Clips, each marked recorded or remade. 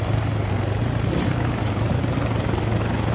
recorded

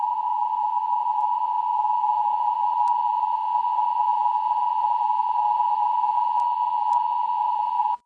remade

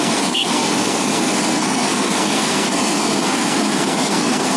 remade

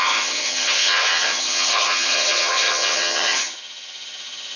remade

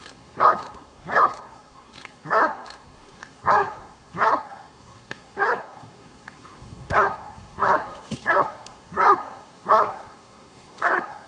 remade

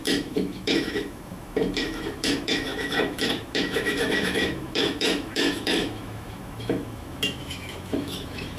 remade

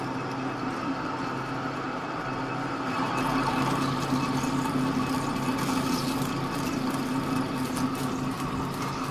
recorded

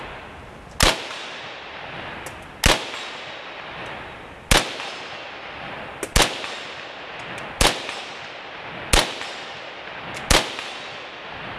recorded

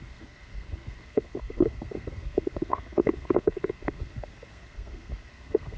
remade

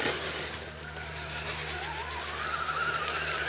recorded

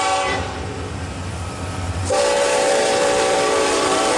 remade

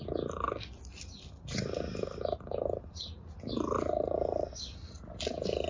recorded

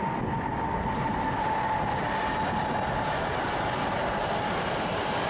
recorded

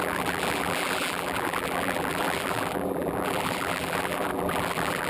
remade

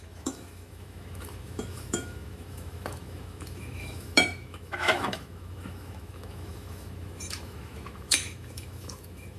remade